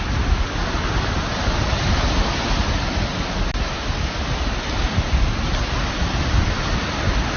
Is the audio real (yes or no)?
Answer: yes